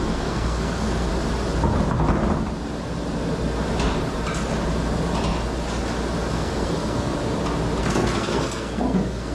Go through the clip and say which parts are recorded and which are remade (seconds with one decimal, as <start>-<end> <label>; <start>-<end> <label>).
0.0-1.1 remade; 1.1-6.3 recorded; 6.3-7.1 remade; 7.1-7.8 recorded; 7.8-9.3 remade